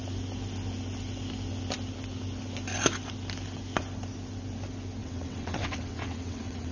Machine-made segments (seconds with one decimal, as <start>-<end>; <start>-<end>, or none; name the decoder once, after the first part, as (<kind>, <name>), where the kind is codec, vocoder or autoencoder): 5.0-6.7 (vocoder, WaveNeXt)